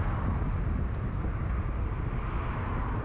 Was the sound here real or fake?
real